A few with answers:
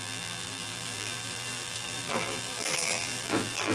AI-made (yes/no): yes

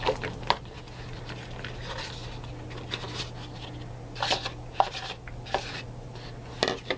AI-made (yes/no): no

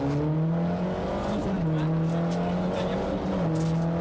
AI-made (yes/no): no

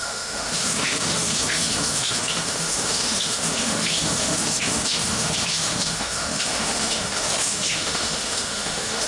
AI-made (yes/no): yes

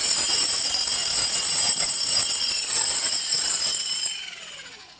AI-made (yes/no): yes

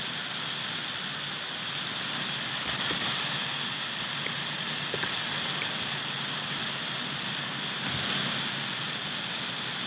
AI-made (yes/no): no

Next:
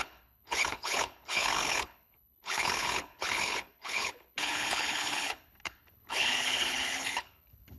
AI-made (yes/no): yes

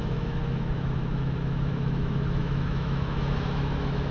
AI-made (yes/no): yes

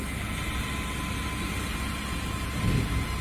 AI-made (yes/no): no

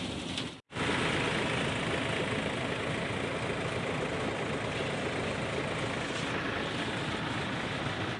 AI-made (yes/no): no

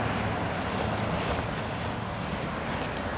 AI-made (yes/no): no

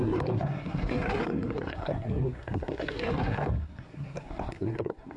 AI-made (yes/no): yes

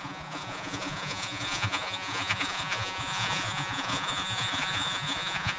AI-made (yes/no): yes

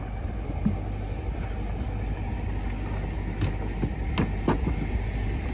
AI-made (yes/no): no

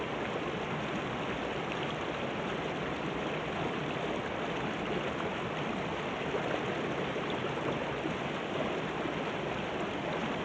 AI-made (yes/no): no